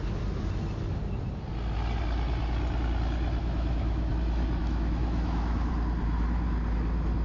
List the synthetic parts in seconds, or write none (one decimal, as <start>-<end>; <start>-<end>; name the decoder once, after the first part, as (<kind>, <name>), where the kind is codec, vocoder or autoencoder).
3.4-4.1 (autoencoder, DAC-VAE); 4.6-5.7